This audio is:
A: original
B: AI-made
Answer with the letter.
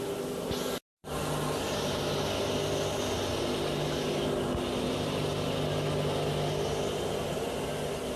A